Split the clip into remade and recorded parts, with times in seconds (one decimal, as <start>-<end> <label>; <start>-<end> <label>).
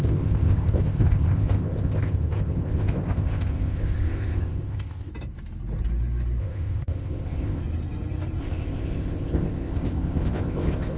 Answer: 0.0-5.1 remade; 5.1-6.4 recorded; 6.4-7.6 remade; 7.6-8.4 recorded; 8.4-11.0 remade